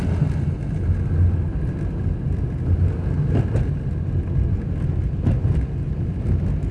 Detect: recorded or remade recorded